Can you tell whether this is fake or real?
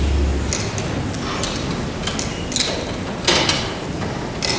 real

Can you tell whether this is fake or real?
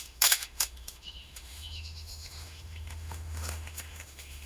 fake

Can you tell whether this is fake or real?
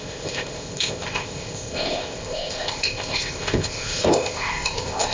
fake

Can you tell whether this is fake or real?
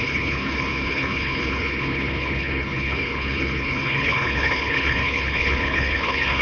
fake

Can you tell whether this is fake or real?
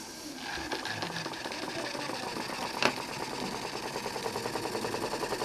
real